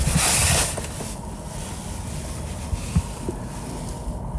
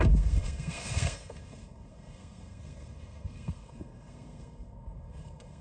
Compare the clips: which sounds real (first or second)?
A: first